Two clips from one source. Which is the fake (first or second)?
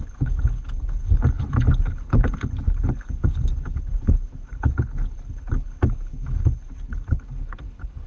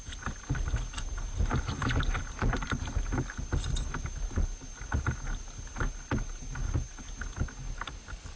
first